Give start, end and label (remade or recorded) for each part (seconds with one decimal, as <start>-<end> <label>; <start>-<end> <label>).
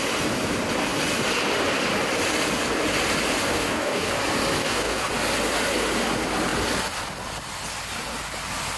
0.0-3.4 recorded; 3.4-4.1 remade; 4.1-4.6 recorded; 4.6-5.1 remade; 5.1-8.8 recorded